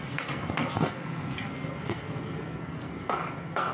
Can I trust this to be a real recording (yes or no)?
no